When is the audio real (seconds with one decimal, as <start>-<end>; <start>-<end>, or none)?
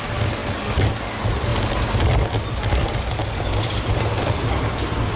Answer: 0.0-5.2